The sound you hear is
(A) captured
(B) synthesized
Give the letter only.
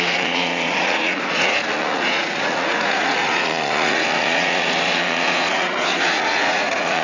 B